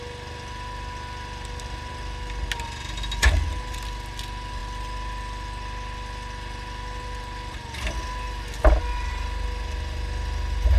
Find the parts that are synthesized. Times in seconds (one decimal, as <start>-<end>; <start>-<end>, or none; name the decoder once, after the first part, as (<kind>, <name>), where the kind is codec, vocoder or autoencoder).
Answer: none